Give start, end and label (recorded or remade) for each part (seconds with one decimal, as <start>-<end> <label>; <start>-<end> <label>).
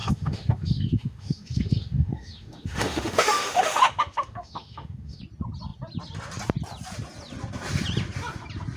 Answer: 0.0-5.2 remade; 5.2-8.8 recorded